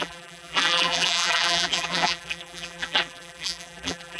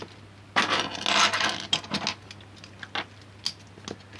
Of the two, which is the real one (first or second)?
second